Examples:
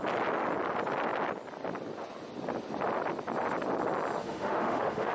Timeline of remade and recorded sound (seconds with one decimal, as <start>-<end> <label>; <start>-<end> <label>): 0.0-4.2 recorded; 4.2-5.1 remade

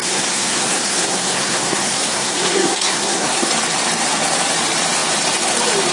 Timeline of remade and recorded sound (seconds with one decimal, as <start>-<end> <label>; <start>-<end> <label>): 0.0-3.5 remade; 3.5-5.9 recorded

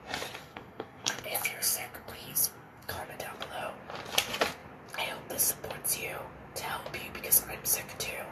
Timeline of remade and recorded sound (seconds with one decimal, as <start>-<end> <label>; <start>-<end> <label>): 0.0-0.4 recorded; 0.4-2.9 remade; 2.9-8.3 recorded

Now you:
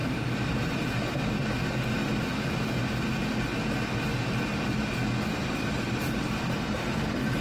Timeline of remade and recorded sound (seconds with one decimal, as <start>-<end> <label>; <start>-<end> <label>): 0.0-5.4 recorded; 5.4-7.4 remade